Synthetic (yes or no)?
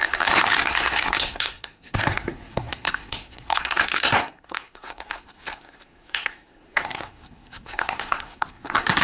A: yes